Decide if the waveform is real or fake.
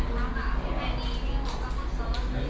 real